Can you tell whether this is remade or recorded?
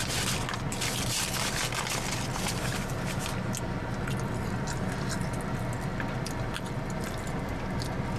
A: recorded